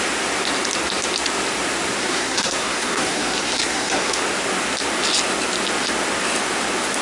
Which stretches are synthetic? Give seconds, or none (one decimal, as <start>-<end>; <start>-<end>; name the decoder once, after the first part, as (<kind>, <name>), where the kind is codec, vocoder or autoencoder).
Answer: 2.0-4.2 (codec, SNAC)